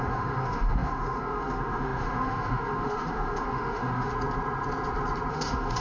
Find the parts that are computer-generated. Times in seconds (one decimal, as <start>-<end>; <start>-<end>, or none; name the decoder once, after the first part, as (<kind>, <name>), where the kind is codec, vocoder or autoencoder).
0.0-4.1 (autoencoder, DAC-VAE); 5.3-5.8